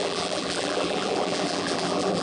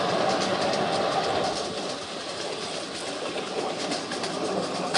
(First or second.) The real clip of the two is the second